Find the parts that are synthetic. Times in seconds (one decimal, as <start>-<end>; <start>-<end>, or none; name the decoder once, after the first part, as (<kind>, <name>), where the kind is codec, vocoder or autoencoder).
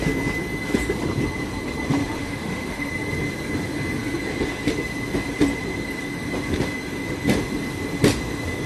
2.0-2.9 (autoencoder, DAC-VAE)